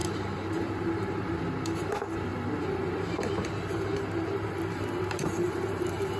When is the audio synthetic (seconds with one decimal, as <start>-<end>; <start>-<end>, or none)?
0.0-1.4; 2.3-6.2